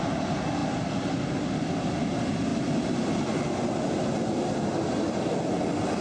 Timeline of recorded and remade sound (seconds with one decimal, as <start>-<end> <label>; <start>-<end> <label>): 0.0-6.0 recorded